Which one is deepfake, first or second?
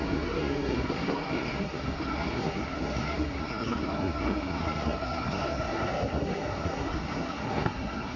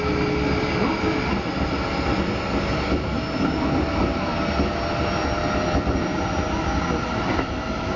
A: first